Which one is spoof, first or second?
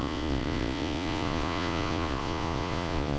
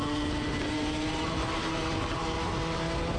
first